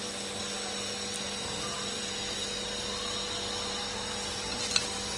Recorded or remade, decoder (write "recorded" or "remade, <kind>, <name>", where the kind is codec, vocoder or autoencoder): recorded